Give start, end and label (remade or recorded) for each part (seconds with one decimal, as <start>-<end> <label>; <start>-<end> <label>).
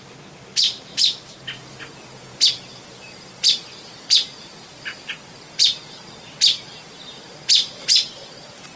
0.0-2.7 recorded; 2.7-5.1 remade; 5.1-8.8 recorded